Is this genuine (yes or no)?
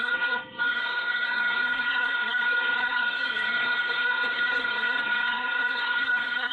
no